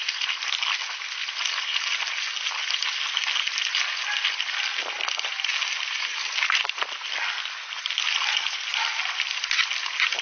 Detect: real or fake real